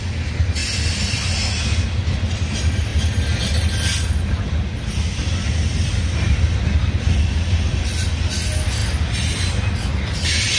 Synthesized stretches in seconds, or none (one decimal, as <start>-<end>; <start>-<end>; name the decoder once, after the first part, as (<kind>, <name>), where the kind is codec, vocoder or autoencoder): none